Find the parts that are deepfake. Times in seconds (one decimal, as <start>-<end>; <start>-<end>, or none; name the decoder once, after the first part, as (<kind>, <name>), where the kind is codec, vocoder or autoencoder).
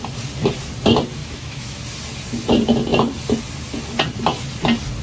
1.2-1.8 (autoencoder, DAC-VAE)